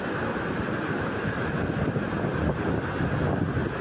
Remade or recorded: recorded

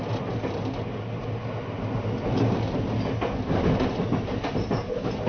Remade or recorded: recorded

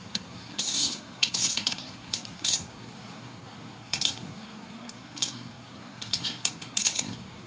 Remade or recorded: remade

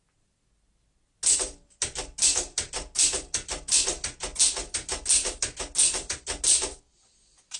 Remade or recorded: recorded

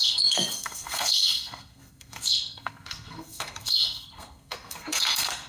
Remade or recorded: remade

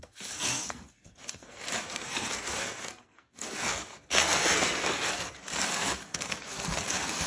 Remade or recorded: remade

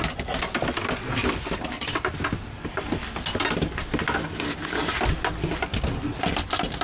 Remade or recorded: recorded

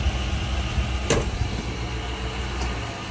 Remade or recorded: recorded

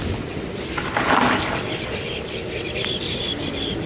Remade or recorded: recorded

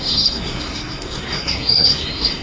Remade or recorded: remade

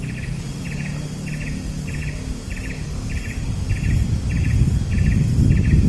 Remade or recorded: recorded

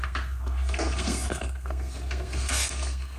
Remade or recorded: remade